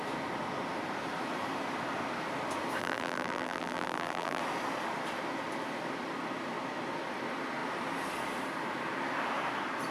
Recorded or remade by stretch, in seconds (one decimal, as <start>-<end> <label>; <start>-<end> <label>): 0.0-2.8 recorded; 2.8-4.4 remade; 4.4-9.9 recorded

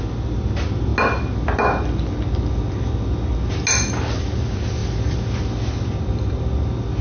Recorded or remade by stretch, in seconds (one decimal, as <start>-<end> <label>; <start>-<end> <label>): 0.0-7.0 recorded

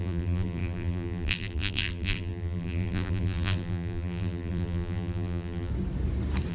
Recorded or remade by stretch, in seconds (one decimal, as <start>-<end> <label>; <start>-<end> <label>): 0.0-5.7 remade; 5.7-6.5 recorded

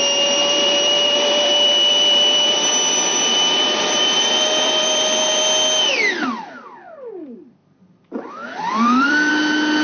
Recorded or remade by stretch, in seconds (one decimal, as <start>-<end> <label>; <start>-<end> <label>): 0.0-0.4 recorded; 0.4-5.4 remade; 5.4-7.6 recorded; 7.6-9.3 remade; 9.3-9.8 recorded

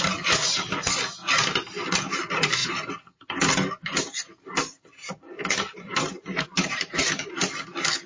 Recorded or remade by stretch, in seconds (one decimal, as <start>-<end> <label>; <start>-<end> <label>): 0.0-2.6 recorded; 2.6-7.3 remade; 7.3-8.1 recorded

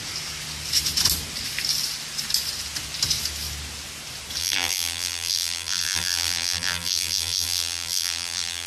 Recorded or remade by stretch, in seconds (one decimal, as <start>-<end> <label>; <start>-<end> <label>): 0.0-4.4 recorded; 4.4-8.7 remade

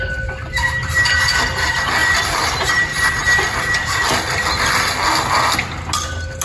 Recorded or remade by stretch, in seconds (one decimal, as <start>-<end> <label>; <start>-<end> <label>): 0.0-2.0 recorded; 2.0-3.1 remade; 3.1-6.4 recorded